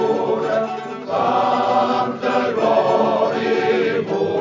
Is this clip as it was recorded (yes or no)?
no